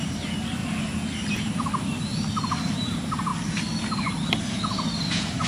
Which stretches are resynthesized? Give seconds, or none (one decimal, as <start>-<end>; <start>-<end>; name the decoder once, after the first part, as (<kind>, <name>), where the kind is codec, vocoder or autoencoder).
0.0-0.6 (vocoder, BigVGAN v2); 1.3-2.1; 2.7-3.3; 4.4-5.5